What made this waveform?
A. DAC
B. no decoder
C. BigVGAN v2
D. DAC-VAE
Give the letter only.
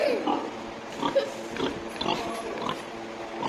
B